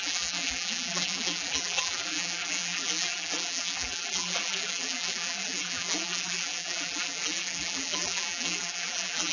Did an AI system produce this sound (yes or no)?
yes